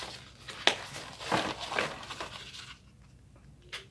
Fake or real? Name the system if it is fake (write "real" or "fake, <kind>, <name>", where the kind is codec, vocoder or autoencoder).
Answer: real